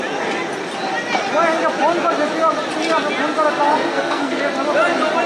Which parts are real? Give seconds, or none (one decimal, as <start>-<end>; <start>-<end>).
0.0-3.7; 4.4-5.3